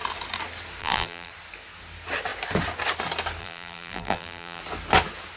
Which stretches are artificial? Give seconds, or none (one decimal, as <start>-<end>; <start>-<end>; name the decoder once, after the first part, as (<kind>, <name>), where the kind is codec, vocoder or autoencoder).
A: 0.8-1.3 (vocoder, BigVGAN v2); 3.4-4.6